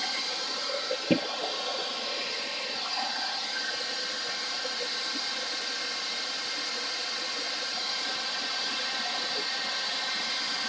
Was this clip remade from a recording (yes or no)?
no